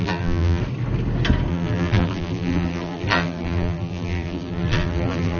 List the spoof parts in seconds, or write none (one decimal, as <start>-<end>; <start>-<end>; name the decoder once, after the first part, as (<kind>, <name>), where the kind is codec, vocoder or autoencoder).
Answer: 0.0-0.6 (vocoder, BigVGAN v2); 1.5-5.4